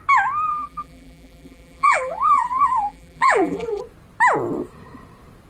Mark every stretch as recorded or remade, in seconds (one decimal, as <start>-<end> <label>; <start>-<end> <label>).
0.0-0.5 recorded; 0.5-3.8 remade; 3.8-5.5 recorded